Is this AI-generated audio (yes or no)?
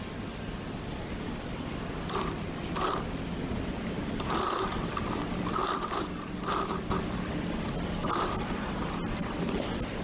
no